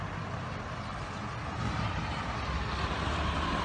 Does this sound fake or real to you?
real